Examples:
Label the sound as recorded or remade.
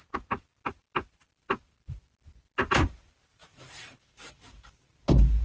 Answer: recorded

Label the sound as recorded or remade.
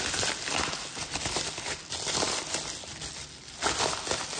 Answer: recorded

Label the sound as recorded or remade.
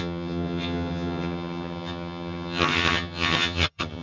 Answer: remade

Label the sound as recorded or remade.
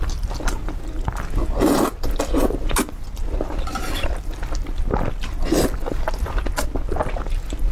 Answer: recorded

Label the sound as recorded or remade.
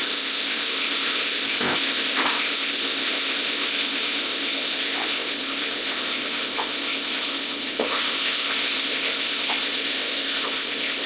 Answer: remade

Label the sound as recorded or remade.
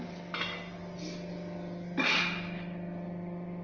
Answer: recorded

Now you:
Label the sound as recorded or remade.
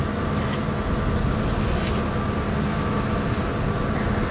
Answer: recorded